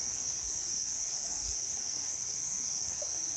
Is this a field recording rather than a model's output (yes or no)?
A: no